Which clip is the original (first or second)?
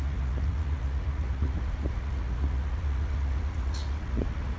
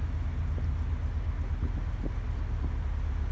second